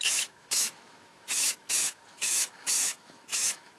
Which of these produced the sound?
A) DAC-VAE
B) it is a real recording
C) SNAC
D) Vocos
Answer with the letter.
A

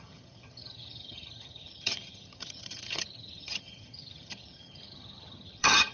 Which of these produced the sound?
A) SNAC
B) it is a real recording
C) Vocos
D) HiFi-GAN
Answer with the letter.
D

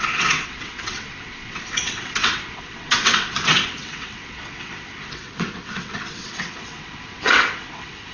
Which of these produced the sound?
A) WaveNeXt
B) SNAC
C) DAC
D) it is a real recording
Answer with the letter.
A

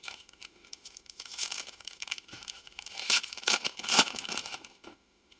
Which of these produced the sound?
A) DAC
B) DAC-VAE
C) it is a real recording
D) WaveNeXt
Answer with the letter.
B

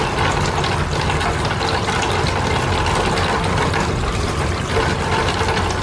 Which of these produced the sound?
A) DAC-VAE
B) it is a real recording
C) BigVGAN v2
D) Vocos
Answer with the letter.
B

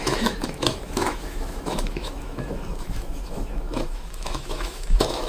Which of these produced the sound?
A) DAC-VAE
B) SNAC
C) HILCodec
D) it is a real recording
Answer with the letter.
A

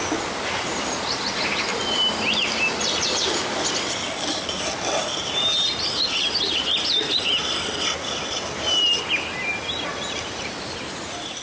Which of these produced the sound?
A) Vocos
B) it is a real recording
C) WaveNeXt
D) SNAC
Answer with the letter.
B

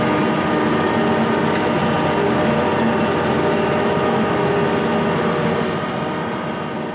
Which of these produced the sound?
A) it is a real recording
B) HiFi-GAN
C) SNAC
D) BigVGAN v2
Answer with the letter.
A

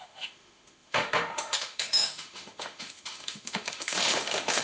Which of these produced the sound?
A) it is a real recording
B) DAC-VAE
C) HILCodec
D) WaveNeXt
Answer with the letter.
B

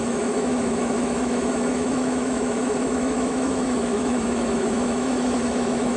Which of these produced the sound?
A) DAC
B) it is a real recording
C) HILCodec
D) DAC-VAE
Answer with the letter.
D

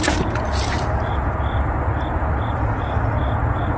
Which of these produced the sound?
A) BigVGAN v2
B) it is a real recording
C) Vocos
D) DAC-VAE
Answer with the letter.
B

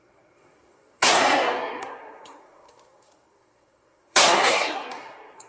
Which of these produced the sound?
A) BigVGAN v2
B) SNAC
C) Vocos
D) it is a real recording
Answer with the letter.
B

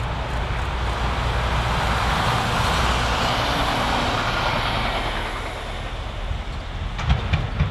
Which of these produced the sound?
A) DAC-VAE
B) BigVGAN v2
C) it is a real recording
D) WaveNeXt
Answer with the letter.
C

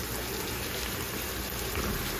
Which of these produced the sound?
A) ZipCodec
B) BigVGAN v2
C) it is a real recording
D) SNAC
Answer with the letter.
C